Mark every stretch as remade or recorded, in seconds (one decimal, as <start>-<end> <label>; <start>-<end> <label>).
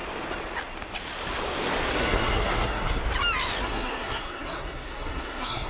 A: 0.0-1.9 recorded; 1.9-3.0 remade; 3.0-3.6 recorded; 3.6-5.7 remade